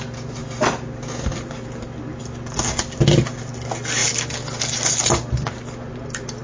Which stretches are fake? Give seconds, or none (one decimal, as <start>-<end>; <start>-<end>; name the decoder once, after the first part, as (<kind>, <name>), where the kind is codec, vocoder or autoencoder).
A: none